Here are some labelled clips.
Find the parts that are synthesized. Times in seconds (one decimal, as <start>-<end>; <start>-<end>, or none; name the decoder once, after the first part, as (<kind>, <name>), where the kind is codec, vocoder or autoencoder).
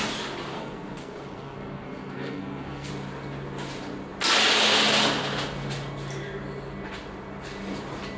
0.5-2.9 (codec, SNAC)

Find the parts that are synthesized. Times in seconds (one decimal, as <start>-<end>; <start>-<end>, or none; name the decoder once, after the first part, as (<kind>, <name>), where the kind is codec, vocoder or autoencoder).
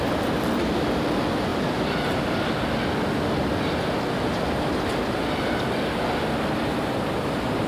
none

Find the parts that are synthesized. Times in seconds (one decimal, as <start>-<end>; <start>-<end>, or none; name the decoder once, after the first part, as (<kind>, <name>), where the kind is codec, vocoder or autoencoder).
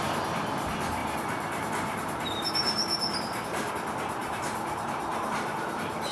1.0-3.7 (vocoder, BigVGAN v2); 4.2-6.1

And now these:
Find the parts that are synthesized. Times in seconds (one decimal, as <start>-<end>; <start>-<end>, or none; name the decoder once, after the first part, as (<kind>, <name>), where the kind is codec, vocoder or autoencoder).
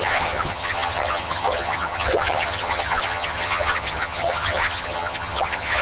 0.0-5.8 (vocoder, HiFi-GAN)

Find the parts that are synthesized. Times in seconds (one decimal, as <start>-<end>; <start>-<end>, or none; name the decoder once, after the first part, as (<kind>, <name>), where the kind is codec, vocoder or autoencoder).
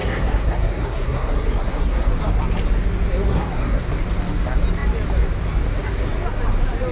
0.0-2.1 (codec, SNAC); 3.3-3.9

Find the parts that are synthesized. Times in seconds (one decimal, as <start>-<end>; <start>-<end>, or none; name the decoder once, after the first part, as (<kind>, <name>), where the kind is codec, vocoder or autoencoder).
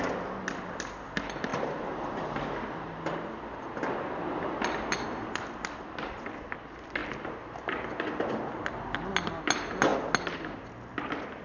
none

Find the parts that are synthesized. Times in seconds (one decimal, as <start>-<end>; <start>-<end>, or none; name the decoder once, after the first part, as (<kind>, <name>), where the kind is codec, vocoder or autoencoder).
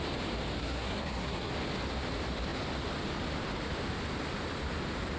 0.6-1.5 (codec, SNAC)